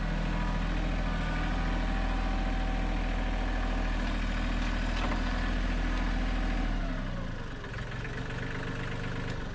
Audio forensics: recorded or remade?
recorded